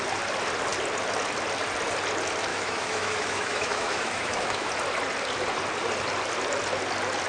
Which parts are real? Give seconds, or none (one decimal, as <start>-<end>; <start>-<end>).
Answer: 0.0-2.5; 4.7-7.3